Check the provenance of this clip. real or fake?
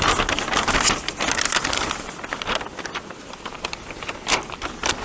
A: real